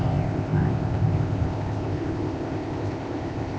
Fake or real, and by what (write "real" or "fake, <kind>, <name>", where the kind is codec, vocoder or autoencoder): fake, codec, ZipCodec